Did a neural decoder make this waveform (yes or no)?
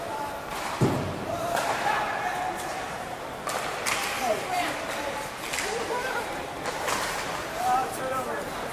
yes